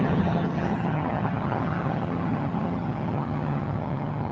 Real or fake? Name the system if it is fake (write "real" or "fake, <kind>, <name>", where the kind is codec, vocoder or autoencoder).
fake, vocoder, HiFi-GAN